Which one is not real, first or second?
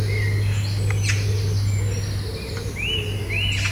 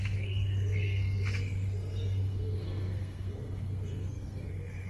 second